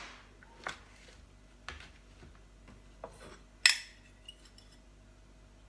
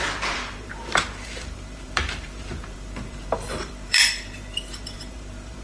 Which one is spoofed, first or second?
second